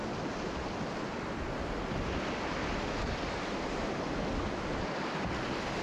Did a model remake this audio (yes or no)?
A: no